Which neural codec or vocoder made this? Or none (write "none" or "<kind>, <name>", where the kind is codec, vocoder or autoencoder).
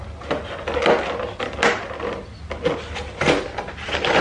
none